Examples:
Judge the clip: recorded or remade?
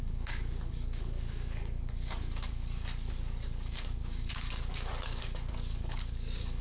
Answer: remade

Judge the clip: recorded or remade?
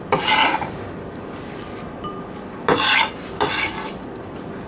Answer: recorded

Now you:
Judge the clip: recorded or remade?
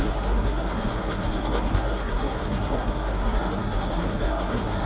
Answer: remade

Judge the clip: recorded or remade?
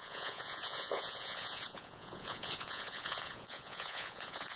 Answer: remade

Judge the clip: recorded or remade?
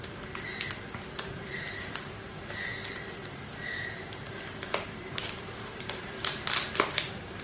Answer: remade